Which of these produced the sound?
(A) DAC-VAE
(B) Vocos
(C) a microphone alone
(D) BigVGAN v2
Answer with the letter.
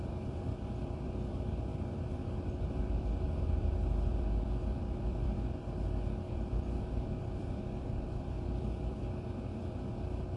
D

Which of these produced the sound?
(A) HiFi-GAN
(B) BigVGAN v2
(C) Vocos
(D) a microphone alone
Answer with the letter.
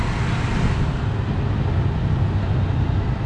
D